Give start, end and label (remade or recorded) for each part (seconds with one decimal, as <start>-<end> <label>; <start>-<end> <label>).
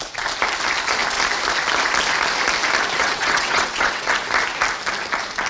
0.0-3.0 recorded; 3.0-4.1 remade; 4.1-5.5 recorded